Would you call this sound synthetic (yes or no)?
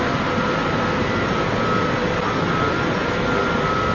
no